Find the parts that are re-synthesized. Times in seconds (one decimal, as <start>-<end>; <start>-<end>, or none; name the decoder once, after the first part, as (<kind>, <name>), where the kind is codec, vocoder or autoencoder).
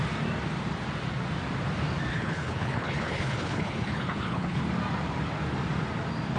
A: 2.1-4.6 (codec, HILCodec)